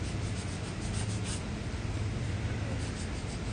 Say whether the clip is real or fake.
real